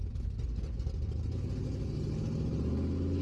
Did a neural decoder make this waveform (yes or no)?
no